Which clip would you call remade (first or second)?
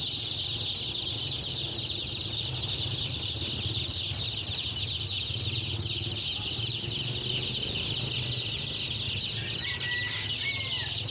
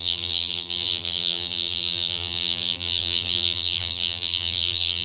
second